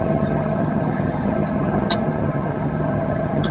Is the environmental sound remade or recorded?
remade